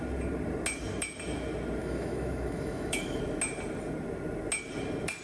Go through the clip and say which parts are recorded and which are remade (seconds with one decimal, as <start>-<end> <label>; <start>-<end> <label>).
0.0-1.8 recorded; 1.8-3.2 remade; 3.2-5.2 recorded